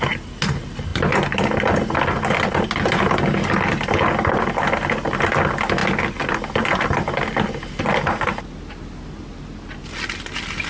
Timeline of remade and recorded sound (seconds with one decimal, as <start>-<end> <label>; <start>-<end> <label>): 0.0-10.7 recorded